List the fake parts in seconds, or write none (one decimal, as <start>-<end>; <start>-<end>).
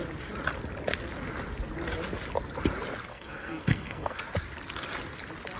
3.1-4.2